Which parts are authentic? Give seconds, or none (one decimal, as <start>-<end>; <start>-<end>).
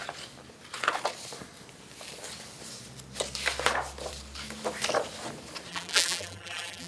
0.0-5.7